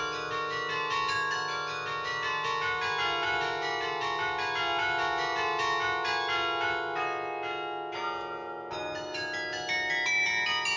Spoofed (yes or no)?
no